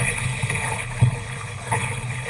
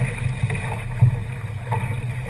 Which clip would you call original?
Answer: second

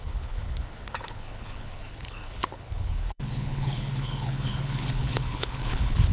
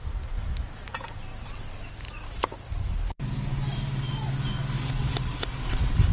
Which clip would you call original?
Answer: second